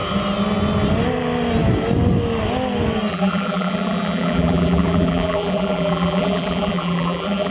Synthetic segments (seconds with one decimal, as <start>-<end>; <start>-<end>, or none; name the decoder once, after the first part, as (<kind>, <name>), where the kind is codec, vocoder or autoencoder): 3.1-7.5 (vocoder, BigVGAN v2)